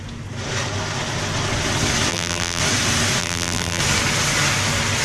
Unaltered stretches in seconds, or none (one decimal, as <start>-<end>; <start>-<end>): 0.0-2.1; 2.6-3.2; 3.8-5.0